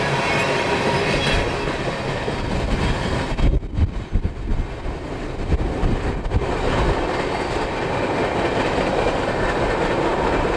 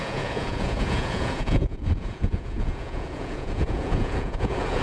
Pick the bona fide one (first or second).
first